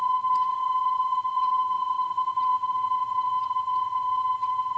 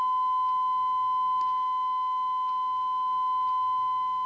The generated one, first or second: first